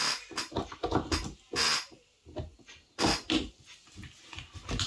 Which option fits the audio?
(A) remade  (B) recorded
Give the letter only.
B